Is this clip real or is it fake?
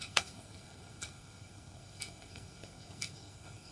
fake